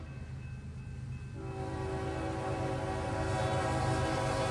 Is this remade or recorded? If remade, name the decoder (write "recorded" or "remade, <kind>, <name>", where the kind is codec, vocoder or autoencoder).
recorded